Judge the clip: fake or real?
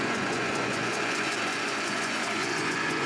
fake